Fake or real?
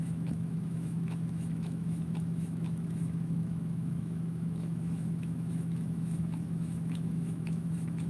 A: fake